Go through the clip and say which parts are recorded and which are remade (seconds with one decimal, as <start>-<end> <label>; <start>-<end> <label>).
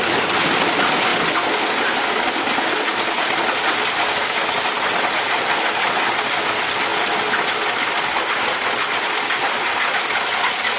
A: 0.0-10.8 recorded